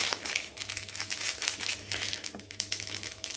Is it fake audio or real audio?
fake